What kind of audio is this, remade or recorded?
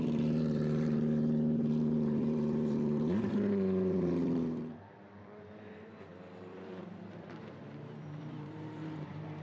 remade